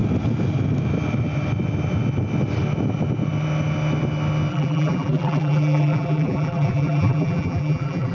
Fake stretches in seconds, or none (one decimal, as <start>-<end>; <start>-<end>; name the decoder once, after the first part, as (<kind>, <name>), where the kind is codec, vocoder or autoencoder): 4.5-8.1 (vocoder, BigVGAN v2)